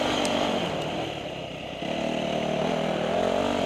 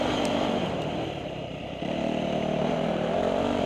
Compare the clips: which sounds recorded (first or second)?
first